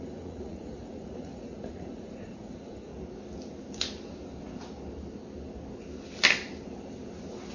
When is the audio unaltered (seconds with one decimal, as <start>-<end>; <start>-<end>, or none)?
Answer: 2.9-7.5